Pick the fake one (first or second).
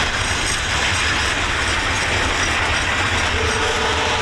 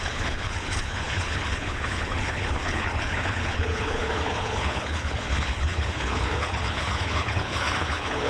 second